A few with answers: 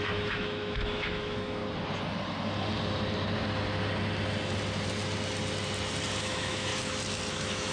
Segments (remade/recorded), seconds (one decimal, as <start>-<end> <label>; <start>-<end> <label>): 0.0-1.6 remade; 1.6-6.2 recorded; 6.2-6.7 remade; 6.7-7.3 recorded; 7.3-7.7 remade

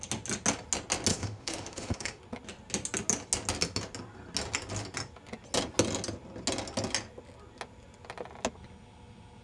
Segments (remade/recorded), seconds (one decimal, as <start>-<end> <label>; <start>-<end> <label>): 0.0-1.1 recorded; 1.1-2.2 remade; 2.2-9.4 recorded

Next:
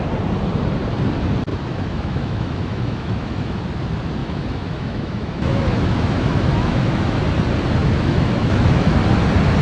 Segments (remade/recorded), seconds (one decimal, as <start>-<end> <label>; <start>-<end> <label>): 0.0-1.5 recorded; 1.5-3.6 remade; 3.6-4.2 recorded; 4.2-7.2 remade; 7.2-7.8 recorded; 7.8-9.0 remade; 9.0-9.6 recorded

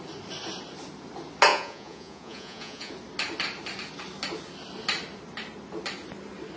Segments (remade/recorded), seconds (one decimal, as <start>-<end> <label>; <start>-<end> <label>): 0.0-1.5 recorded; 1.5-2.9 remade; 2.9-6.6 recorded

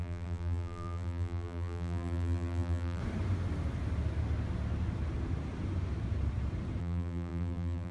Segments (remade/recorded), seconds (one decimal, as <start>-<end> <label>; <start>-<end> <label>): 0.0-3.0 remade; 3.0-6.8 recorded; 6.8-7.9 remade

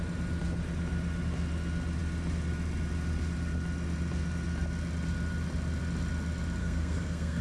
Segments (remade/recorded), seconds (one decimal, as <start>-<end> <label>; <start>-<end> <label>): 0.0-6.6 recorded; 6.6-7.4 remade

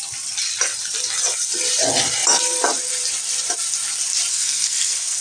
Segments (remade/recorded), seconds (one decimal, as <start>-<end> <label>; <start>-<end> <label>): 0.0-4.3 recorded; 4.3-5.2 remade

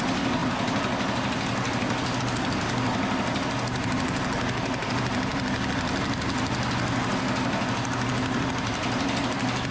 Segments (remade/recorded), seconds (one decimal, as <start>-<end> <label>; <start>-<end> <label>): 0.0-9.7 recorded